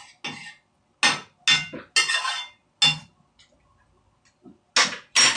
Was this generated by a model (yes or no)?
no